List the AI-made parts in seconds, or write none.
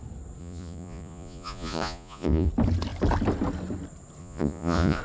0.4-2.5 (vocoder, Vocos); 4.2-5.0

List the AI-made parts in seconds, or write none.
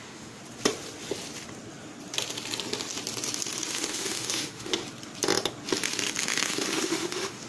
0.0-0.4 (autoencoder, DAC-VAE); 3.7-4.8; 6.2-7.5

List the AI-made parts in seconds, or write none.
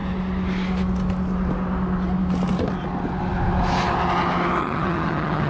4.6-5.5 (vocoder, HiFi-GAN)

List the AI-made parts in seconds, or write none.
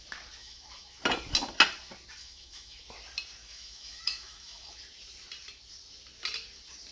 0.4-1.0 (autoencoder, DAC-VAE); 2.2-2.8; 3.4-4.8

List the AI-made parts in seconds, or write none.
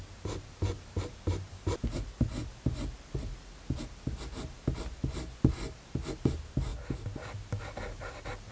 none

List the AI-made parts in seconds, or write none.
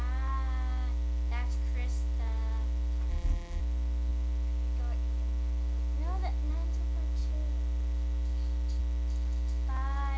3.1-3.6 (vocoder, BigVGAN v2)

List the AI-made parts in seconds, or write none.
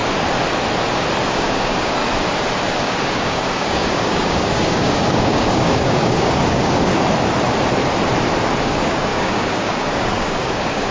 1.3-2.0 (codec, DAC); 2.8-6.9; 8.6-10.9